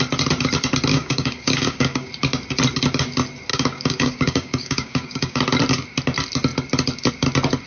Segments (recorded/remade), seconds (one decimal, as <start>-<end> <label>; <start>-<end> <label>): 0.0-0.9 recorded; 0.9-2.1 remade; 2.1-3.5 recorded; 3.5-5.4 remade; 5.4-7.7 recorded